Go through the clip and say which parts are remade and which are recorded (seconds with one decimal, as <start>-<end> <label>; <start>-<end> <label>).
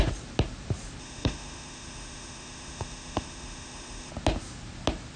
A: 0.0-1.0 recorded; 1.0-4.1 remade; 4.1-5.2 recorded